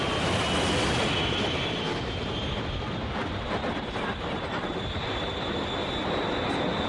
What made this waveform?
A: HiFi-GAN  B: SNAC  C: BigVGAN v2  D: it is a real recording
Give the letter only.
D